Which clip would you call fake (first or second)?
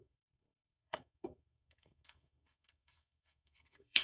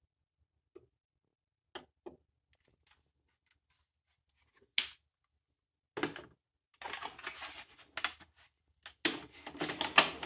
first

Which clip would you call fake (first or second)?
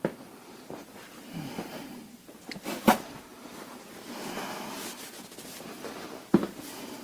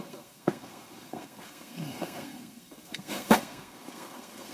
second